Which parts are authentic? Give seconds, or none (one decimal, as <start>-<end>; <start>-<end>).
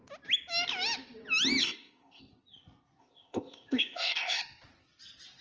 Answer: 0.0-1.6; 2.2-3.0; 4.4-5.4